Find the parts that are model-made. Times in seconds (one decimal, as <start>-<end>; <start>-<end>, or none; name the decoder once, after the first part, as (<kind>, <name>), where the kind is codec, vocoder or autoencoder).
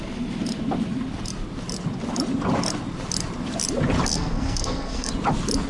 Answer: 4.1-5.1 (codec, SNAC)